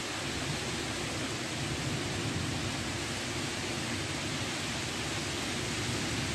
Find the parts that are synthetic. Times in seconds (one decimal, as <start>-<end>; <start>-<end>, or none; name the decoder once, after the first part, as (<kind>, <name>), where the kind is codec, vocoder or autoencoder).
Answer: none